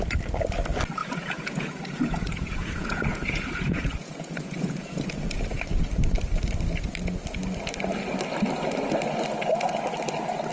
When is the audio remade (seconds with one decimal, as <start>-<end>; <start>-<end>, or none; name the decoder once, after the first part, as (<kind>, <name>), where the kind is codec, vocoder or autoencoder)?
1.0-5.6 (vocoder, Vocos)